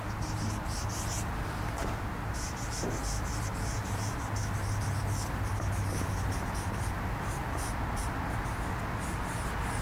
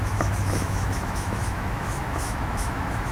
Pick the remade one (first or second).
second